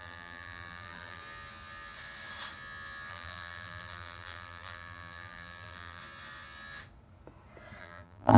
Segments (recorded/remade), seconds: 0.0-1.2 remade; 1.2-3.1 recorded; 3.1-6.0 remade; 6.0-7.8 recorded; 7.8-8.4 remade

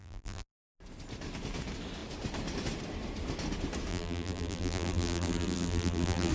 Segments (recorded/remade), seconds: 0.0-0.7 remade; 0.7-3.9 recorded; 3.9-6.3 remade